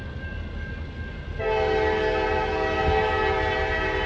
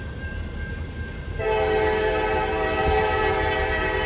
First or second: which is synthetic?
second